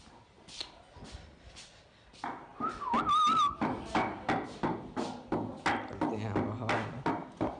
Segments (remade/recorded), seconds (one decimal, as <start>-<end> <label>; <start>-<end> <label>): 0.0-7.6 recorded